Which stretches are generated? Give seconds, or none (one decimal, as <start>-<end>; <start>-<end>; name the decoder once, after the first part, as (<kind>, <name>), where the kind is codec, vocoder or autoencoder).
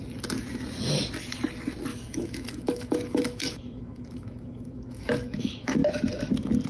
1.9-5.9 (autoencoder, DAC-VAE)